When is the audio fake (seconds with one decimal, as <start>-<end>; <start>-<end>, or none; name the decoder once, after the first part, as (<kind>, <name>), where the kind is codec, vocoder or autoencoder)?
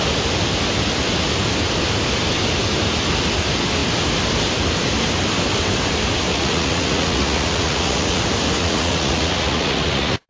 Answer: 6.3-8.2 (vocoder, Vocos); 8.6-10.3